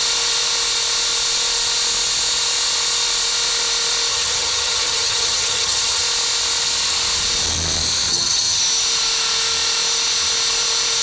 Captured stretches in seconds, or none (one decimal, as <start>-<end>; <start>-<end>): 0.0-4.1; 6.0-8.1; 8.6-11.0